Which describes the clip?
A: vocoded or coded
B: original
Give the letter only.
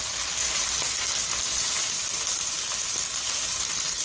B